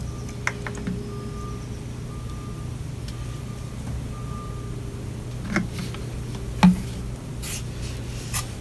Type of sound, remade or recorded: recorded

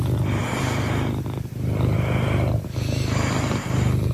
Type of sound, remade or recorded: recorded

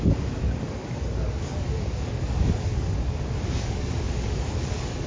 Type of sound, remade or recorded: remade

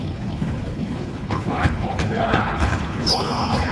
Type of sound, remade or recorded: remade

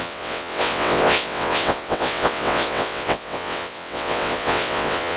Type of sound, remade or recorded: remade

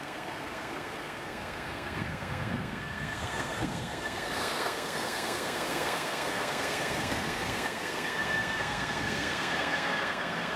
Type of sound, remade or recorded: remade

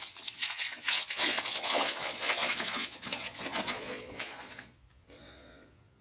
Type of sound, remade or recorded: remade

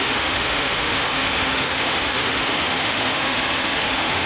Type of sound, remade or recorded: remade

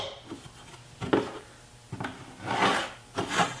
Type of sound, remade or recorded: recorded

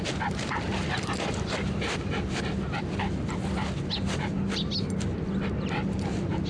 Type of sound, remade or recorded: recorded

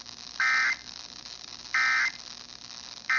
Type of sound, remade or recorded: recorded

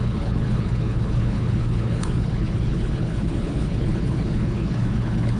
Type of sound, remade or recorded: remade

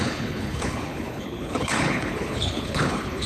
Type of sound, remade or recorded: remade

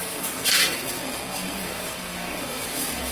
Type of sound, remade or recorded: remade